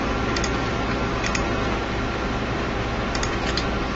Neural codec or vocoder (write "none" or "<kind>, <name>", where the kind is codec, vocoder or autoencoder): none